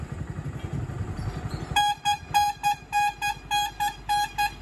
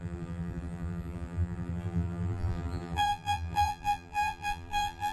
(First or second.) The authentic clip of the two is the first